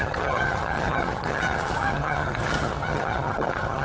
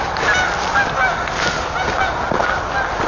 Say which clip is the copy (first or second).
first